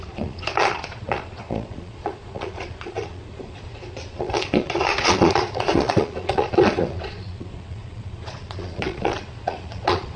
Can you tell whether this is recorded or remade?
remade